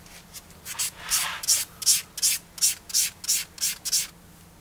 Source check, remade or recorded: recorded